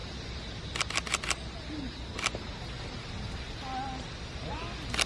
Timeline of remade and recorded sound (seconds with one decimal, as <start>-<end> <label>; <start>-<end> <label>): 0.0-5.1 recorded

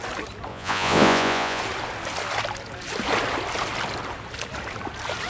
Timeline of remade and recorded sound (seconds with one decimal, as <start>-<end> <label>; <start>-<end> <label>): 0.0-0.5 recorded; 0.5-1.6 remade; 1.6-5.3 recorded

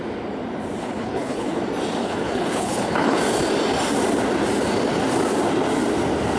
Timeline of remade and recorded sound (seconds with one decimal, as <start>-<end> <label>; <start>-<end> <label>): 0.0-0.8 recorded; 0.8-1.6 remade; 1.6-2.0 recorded; 2.0-3.2 remade; 3.2-6.4 recorded

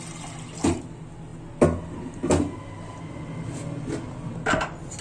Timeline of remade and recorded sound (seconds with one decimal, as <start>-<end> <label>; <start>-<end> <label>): 0.0-5.0 recorded